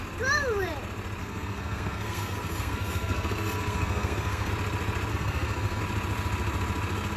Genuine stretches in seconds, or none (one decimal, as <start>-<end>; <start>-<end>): 0.0-1.2; 4.5-5.1; 5.8-7.2